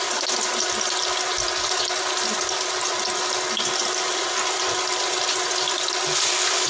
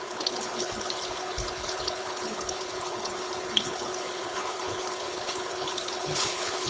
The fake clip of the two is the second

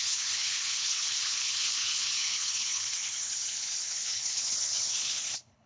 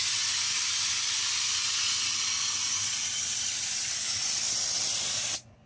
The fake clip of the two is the first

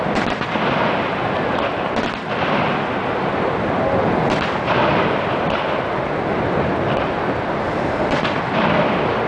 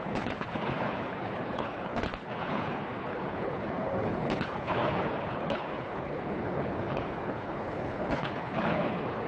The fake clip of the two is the second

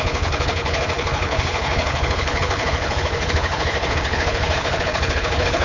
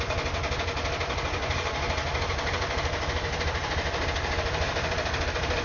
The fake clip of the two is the first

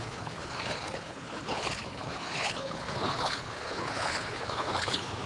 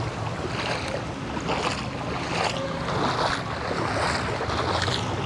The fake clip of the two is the first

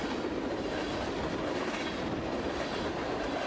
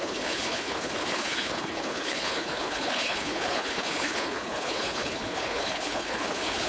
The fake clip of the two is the second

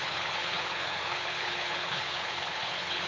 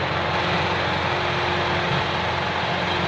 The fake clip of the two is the first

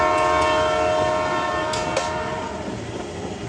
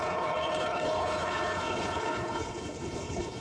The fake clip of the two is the second